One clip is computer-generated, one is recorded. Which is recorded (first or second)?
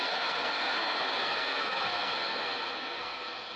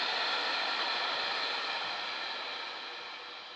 second